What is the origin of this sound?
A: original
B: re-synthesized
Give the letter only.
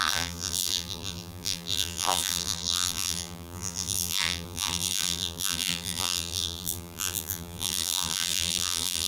B